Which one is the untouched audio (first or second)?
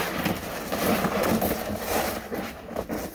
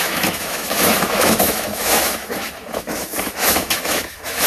first